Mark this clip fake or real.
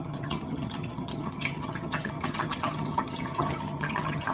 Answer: fake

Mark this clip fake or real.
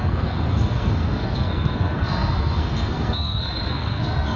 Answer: fake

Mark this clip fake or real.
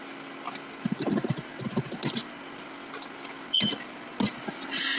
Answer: real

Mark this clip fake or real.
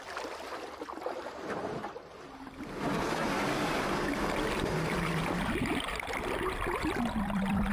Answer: fake